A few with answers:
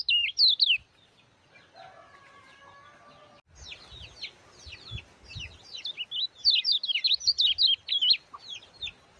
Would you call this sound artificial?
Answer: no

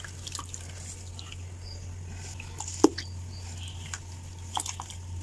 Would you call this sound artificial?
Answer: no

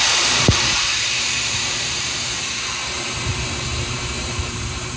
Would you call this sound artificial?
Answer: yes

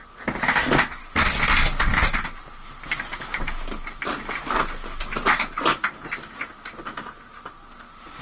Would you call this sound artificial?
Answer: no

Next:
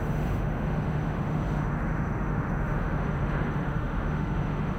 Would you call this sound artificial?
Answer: yes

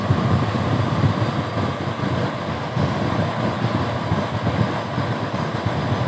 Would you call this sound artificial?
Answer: no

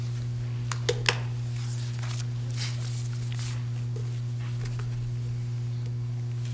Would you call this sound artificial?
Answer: no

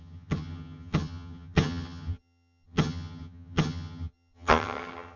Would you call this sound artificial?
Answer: yes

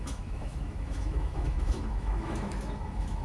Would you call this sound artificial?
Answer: yes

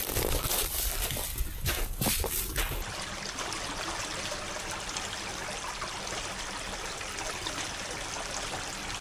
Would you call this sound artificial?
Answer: no